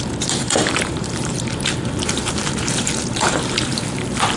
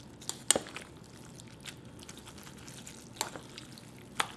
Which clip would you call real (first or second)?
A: second